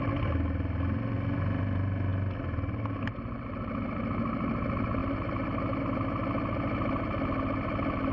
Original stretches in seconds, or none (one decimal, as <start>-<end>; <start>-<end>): 0.0-8.1